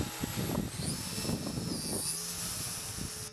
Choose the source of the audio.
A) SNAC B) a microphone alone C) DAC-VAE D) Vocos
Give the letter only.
B